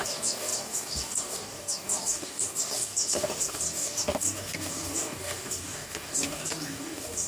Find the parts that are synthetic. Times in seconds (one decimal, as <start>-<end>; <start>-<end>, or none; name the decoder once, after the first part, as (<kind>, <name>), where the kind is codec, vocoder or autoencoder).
0.0-7.3 (codec, DAC)